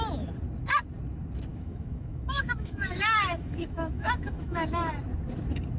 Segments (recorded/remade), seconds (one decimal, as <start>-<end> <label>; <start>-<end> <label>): 0.0-1.5 recorded; 1.5-4.9 remade; 4.9-5.8 recorded